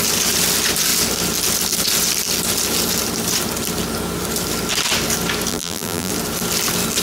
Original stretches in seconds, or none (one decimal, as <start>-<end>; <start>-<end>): 0.0-5.5; 6.1-7.0